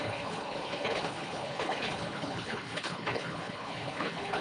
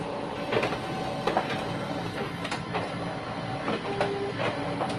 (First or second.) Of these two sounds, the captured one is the second